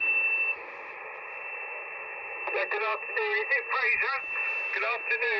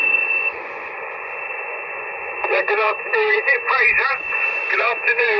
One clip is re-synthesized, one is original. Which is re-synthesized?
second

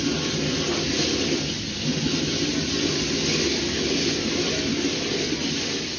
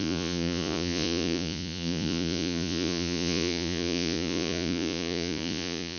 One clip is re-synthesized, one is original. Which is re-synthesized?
second